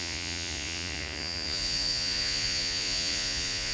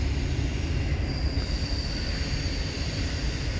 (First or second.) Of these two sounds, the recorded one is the second